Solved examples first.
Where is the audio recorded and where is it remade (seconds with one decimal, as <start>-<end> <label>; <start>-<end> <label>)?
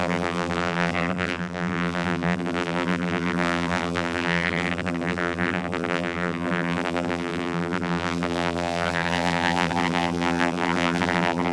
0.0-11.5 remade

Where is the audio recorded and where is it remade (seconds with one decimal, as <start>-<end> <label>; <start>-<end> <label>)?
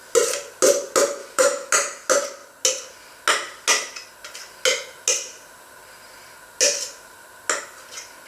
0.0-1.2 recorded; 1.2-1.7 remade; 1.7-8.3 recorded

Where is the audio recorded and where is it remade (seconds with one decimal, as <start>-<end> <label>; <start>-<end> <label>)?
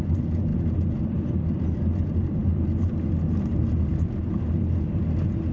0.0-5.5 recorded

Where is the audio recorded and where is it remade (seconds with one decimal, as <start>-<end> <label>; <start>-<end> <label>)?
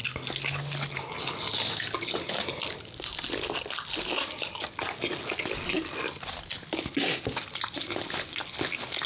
0.0-9.1 recorded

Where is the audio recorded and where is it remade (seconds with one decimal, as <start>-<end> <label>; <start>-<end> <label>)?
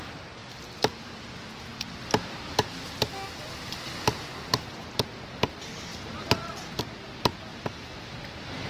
0.0-5.9 recorded; 5.9-6.8 remade; 6.8-7.5 recorded; 7.5-8.7 remade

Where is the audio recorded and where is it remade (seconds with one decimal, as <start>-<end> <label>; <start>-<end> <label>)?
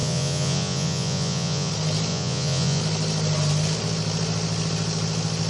0.0-1.7 remade; 1.7-2.1 recorded; 2.1-2.8 remade; 2.8-5.5 recorded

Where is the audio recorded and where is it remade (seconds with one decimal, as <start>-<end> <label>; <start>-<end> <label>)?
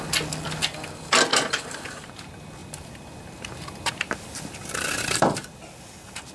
0.0-1.3 recorded; 1.3-2.1 remade; 2.1-2.6 recorded; 2.6-3.9 remade; 3.9-6.3 recorded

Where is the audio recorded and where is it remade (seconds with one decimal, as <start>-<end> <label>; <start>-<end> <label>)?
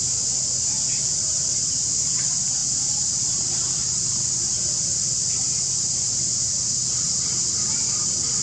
0.0-2.6 recorded; 2.6-5.3 remade; 5.3-8.4 recorded